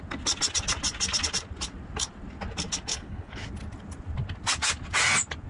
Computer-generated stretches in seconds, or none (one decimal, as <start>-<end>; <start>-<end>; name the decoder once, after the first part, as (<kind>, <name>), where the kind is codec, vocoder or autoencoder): 2.9-3.5 (codec, HILCodec)